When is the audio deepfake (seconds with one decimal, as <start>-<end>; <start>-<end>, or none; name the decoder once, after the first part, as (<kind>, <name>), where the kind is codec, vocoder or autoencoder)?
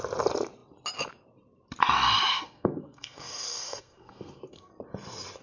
2.3-4.7 (codec, SNAC)